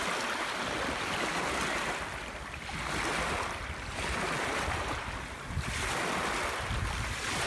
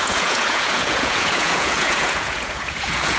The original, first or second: first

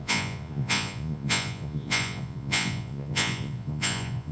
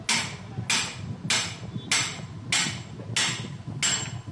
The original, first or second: second